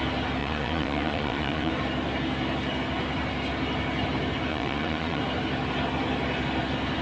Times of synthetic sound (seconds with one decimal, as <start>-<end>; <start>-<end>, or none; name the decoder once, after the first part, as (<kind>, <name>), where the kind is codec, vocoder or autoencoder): 0.4-1.7 (vocoder, Vocos); 4.5-5.2